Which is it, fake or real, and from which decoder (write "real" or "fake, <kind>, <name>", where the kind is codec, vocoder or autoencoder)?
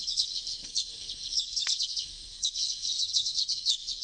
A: fake, codec, SNAC